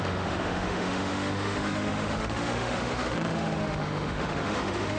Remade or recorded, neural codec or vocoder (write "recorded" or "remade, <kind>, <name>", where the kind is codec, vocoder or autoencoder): remade, autoencoder, DAC-VAE